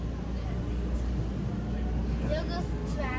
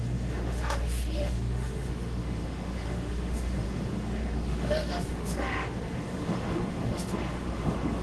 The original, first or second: first